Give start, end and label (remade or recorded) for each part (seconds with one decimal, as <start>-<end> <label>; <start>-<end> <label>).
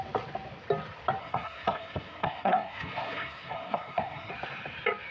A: 0.0-1.2 recorded; 1.2-4.3 remade; 4.3-5.1 recorded